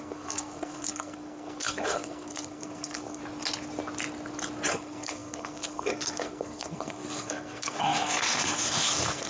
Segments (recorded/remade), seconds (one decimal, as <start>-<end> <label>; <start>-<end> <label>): 0.0-3.2 remade; 3.2-4.7 recorded; 4.7-9.3 remade